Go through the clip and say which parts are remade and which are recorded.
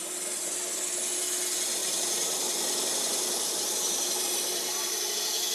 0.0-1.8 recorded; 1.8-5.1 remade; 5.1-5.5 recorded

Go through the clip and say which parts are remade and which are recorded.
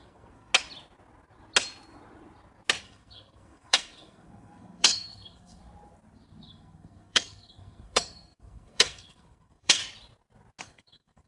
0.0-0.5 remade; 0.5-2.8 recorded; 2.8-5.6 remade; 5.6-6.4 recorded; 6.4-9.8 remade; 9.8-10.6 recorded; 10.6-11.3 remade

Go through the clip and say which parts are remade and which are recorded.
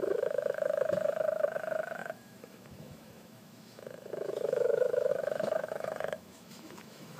0.0-7.2 remade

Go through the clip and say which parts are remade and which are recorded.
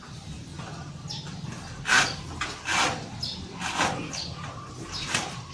0.0-0.5 remade; 0.5-3.8 recorded; 3.8-5.5 remade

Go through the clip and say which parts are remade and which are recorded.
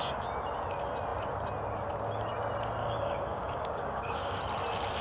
0.0-2.8 recorded; 2.8-4.4 remade; 4.4-5.0 recorded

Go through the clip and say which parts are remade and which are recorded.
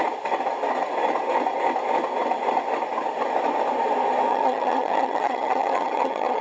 0.0-4.3 recorded; 4.3-6.4 remade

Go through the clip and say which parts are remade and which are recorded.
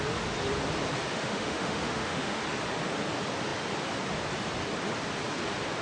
0.0-1.1 recorded; 1.1-2.4 remade; 2.4-5.8 recorded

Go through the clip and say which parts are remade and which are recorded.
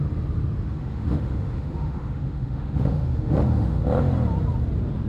0.0-0.7 recorded; 0.7-3.8 remade; 3.8-5.1 recorded